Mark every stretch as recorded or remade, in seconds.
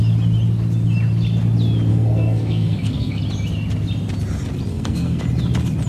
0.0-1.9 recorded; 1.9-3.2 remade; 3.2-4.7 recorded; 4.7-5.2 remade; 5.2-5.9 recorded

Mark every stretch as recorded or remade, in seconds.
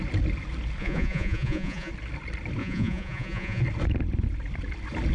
0.0-0.8 recorded; 0.8-1.9 remade; 1.9-2.6 recorded; 2.6-3.6 remade; 3.6-5.1 recorded